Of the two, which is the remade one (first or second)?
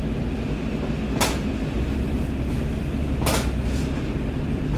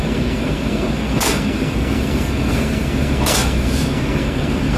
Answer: second